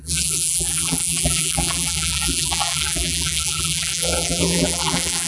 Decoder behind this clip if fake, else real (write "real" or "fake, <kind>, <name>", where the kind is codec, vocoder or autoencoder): fake, vocoder, BigVGAN v2